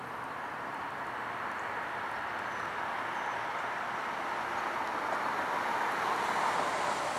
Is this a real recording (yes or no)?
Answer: yes